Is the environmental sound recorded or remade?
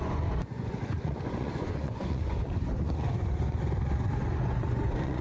remade